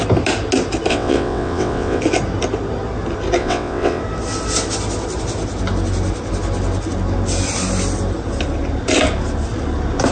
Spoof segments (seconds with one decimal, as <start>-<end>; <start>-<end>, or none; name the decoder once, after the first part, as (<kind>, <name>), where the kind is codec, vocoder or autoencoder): 0.9-2.0 (vocoder, WaveNeXt); 3.4-4.0